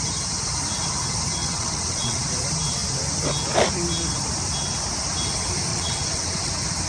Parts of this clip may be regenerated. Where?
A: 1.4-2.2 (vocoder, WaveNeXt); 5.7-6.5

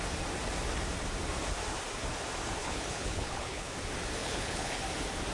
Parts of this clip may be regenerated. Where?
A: 2.6-3.7 (codec, HILCodec); 4.2-4.8

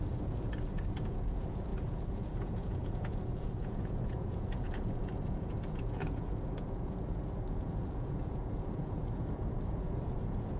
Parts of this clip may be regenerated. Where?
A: 0.0-10.6 (vocoder, Vocos)

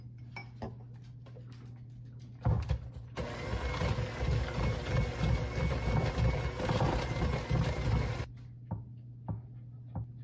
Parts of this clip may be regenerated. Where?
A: none

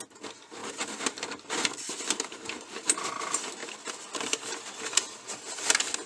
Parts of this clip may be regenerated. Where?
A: 0.6-2.1 (vocoder, BigVGAN v2); 3.6-4.7

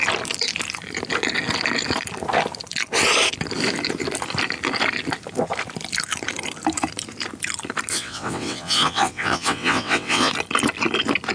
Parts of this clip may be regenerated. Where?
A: 7.9-10.3 (vocoder, WaveNeXt)

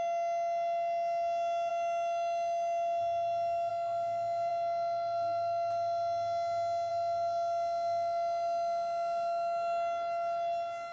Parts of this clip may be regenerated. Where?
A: none